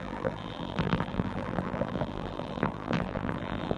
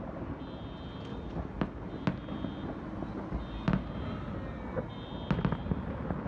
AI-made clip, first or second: first